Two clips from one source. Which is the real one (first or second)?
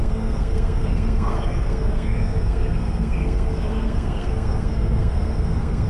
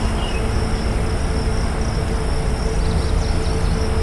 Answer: second